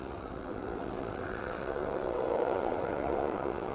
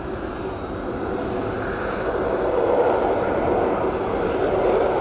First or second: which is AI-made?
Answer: first